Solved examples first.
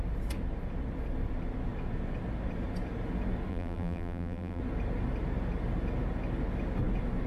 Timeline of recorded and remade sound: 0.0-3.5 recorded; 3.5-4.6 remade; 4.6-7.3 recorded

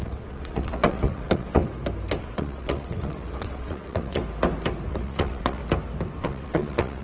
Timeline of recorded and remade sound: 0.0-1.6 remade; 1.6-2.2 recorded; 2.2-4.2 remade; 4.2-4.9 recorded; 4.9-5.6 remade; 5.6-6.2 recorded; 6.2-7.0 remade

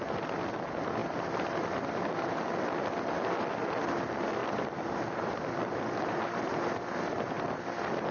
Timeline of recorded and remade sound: 0.0-8.1 recorded

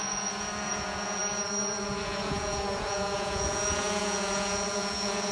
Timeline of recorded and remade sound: 0.0-1.2 remade; 1.2-1.8 recorded; 1.8-5.3 remade